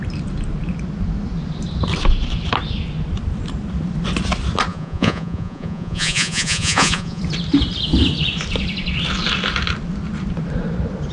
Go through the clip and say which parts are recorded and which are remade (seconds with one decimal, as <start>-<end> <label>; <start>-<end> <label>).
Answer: 0.0-4.7 recorded; 4.7-7.2 remade; 7.2-11.1 recorded